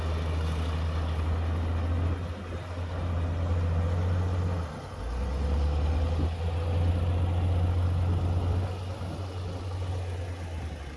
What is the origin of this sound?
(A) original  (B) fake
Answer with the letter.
A